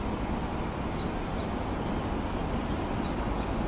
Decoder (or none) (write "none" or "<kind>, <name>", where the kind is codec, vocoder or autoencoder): none